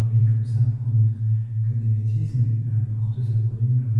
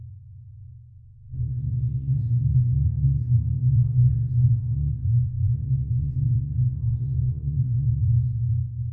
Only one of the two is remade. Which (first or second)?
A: second